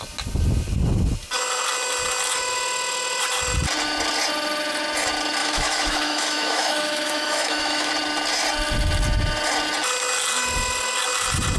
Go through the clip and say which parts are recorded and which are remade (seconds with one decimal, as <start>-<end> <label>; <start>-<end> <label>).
0.0-5.4 recorded; 5.4-7.9 remade; 7.9-11.6 recorded